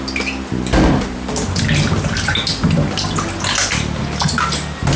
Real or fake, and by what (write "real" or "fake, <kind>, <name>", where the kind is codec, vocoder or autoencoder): real